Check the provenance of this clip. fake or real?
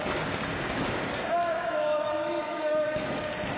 fake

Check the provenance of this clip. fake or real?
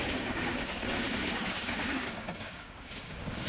fake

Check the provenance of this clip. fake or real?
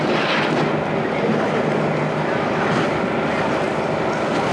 real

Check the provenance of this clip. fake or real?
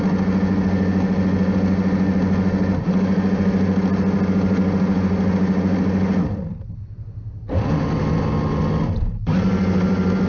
real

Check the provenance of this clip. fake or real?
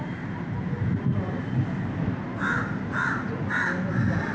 real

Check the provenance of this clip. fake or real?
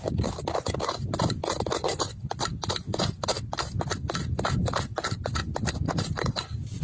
real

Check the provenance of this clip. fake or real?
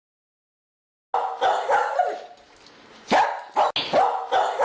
real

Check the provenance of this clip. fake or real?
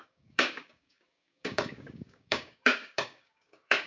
fake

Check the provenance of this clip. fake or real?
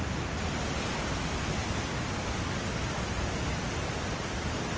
real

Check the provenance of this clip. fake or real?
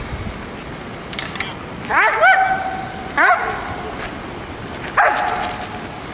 real